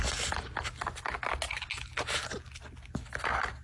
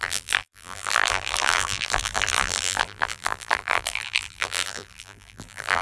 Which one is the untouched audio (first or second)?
first